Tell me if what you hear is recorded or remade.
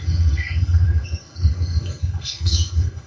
remade